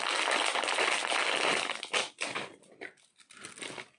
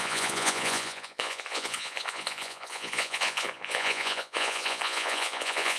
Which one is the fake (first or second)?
second